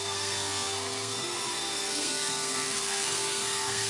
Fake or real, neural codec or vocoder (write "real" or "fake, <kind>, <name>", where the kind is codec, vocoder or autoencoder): fake, codec, SNAC